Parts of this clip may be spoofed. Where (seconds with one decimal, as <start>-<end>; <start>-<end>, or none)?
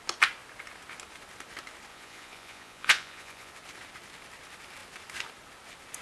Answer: 1.9-3.5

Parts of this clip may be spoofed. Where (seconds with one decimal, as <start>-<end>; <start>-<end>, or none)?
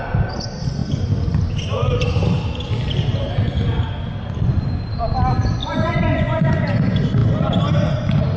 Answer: 5.6-6.4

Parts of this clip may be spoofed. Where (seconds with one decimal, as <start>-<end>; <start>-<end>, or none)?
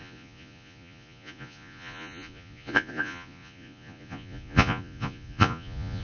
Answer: 0.0-6.0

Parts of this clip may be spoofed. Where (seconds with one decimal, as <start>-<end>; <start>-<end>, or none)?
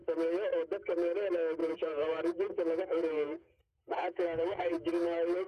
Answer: 1.6-4.9